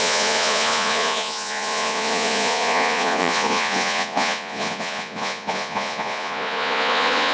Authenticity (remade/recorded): remade